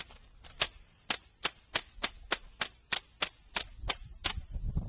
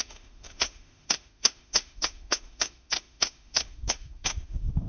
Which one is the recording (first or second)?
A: first